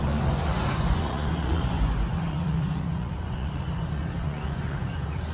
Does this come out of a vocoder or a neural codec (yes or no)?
yes